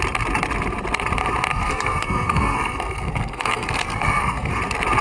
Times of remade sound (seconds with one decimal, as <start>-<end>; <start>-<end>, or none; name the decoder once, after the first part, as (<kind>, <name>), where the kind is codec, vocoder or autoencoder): 1.5-4.5 (codec, SNAC)